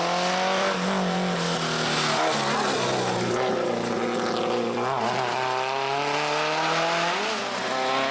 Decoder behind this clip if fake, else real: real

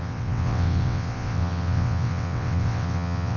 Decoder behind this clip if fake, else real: fake, vocoder, WaveNeXt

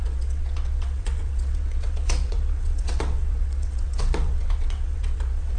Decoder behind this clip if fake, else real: fake, vocoder, WaveNeXt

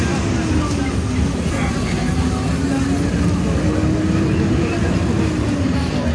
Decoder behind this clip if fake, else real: real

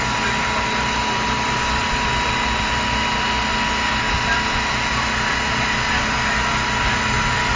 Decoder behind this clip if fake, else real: real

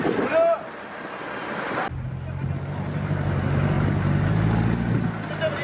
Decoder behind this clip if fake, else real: real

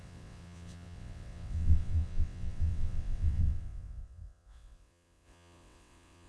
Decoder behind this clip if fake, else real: fake, vocoder, WaveNeXt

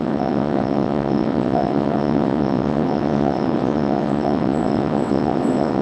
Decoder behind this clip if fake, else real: fake, vocoder, WaveNeXt